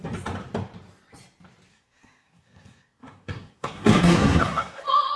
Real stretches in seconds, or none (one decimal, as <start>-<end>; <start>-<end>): 0.0-1.7; 4.8-5.2